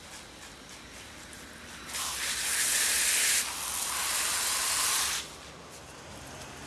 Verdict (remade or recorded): recorded